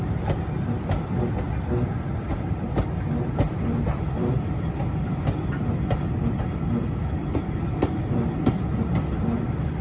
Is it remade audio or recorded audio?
recorded